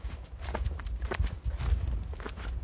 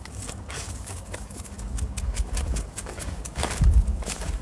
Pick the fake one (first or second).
second